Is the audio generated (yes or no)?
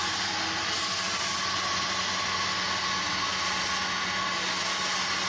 no